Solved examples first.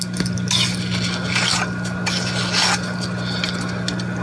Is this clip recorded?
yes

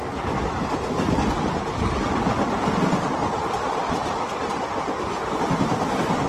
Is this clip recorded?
yes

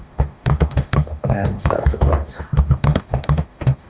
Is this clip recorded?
no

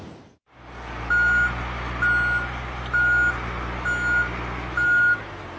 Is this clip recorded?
yes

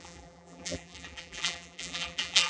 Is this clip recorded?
no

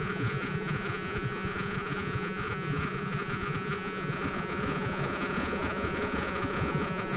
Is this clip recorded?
no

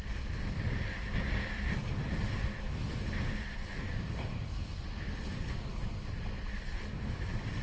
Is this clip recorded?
yes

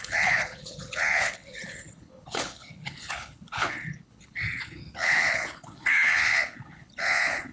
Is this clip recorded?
no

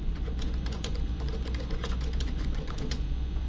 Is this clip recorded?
no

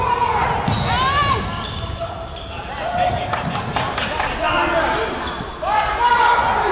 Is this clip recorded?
yes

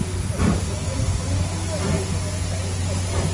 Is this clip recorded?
yes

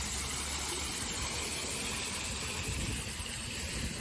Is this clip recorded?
yes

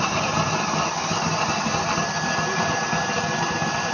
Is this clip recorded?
yes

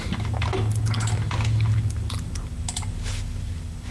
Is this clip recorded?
yes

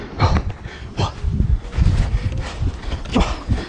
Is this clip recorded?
yes